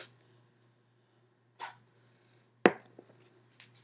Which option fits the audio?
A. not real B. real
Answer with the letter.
B